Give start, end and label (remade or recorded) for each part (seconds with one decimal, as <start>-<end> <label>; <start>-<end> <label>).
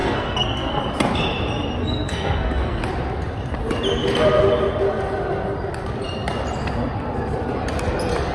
0.0-0.8 remade; 0.8-1.8 recorded; 1.8-2.8 remade; 2.8-8.3 recorded